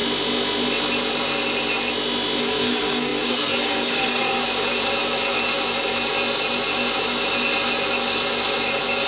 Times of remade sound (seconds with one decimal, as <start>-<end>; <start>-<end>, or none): 2.4-4.4